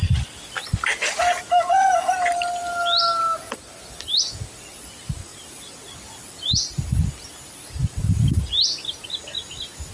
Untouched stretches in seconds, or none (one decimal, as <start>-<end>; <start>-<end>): 0.0-9.9